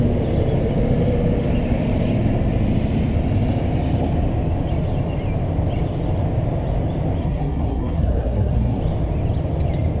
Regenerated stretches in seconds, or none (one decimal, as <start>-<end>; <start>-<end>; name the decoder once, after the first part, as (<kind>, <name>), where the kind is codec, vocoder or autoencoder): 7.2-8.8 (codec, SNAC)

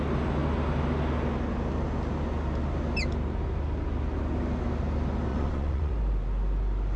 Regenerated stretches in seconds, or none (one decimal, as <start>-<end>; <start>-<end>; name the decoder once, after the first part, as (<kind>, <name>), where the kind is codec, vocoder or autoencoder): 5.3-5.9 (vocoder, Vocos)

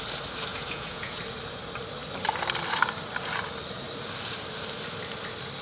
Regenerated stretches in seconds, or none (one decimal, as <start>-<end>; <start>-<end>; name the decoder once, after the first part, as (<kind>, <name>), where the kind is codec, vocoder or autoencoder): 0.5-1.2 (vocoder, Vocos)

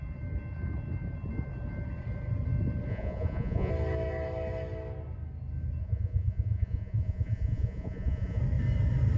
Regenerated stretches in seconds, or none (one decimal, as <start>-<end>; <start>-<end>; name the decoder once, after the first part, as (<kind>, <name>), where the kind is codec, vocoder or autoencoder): 2.9-3.7 (vocoder, Vocos); 5.8-8.4

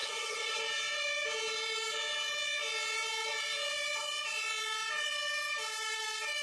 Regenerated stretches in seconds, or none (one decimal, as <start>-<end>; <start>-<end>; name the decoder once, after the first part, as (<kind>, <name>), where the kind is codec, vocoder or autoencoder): 0.0-0.6 (codec, SNAC)